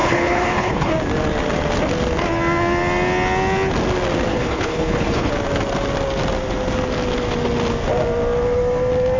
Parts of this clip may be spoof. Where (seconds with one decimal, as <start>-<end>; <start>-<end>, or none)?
0.0-0.9; 4.3-5.3